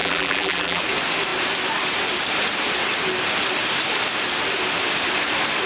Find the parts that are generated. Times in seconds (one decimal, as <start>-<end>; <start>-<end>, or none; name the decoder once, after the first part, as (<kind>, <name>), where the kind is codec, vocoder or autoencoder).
0.0-0.8 (vocoder, BigVGAN v2)